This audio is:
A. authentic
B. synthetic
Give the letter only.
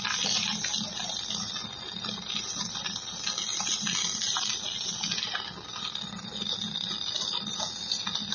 A